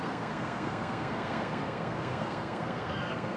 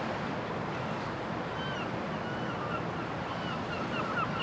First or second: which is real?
second